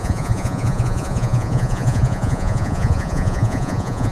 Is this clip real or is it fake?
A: fake